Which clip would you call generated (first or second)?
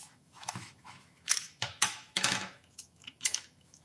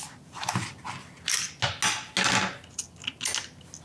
first